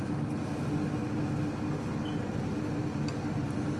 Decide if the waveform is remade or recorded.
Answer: recorded